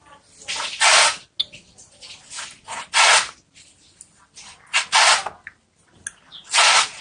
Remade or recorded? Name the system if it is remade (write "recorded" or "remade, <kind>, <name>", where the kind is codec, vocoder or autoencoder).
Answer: recorded